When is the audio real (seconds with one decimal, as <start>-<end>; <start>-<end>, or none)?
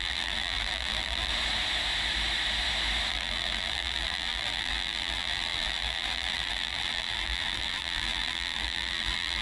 1.3-3.1